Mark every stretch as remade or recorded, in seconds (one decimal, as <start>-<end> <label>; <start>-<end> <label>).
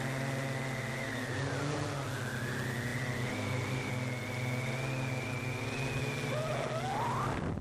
0.0-7.6 recorded